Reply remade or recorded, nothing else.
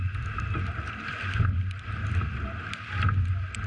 recorded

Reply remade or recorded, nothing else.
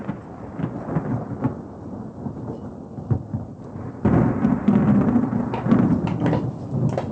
recorded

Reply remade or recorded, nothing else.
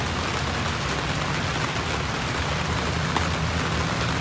recorded